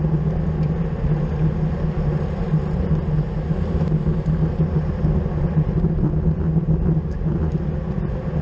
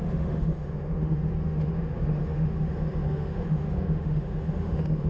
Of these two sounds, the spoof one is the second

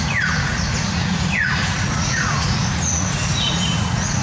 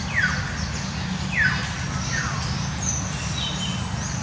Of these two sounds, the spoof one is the first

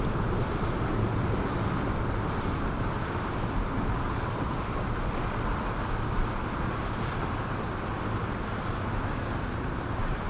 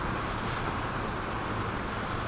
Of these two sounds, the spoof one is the first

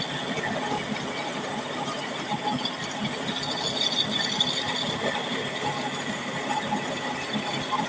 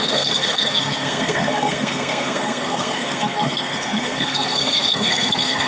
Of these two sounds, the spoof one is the second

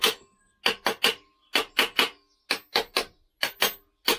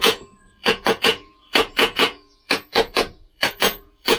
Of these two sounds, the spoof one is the second